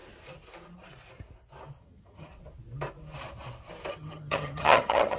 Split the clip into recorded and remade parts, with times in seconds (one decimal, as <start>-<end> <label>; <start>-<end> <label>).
0.0-1.8 recorded; 1.8-2.3 remade; 2.3-3.9 recorded; 3.9-5.2 remade